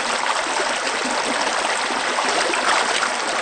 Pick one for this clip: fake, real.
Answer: real